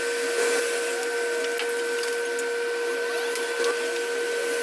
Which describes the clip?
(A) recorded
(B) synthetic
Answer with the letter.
A